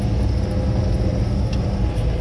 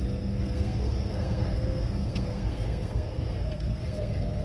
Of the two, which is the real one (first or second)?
first